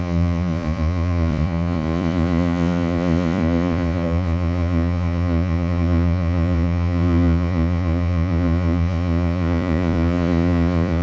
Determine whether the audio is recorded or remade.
remade